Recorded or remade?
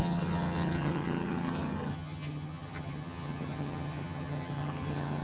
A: remade